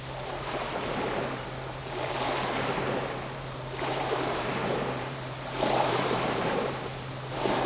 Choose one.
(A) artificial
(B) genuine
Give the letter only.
A